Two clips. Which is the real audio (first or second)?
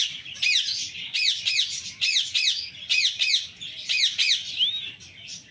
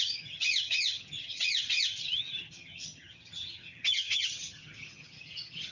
first